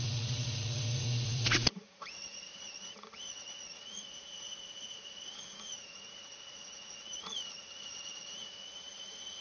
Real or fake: fake